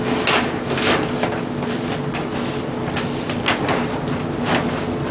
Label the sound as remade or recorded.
recorded